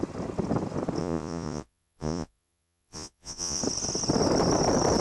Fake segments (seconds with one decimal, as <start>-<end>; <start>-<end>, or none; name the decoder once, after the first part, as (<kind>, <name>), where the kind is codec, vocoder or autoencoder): 1.0-3.6 (vocoder, Vocos)